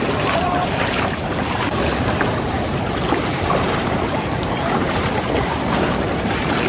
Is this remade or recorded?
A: remade